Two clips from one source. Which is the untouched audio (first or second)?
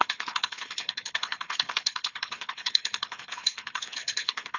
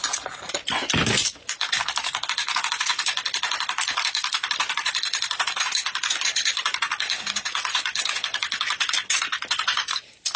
second